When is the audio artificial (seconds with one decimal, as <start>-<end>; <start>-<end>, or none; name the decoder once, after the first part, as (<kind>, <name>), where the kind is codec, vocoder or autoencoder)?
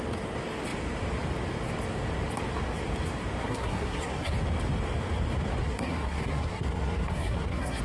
3.4-4.3 (codec, SNAC); 5.6-7.8